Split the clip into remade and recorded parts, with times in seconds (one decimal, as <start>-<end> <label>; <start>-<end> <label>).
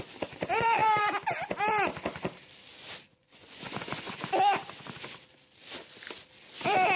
0.0-3.1 recorded; 3.1-4.1 remade; 4.1-7.0 recorded